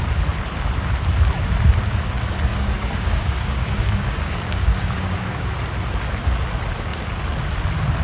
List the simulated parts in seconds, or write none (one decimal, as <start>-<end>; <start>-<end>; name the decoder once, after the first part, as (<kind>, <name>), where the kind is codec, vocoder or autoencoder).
2.5-5.5 (codec, DAC)